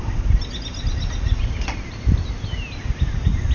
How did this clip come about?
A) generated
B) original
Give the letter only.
B